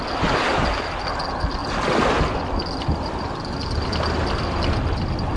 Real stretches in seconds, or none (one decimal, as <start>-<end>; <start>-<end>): 0.0-5.4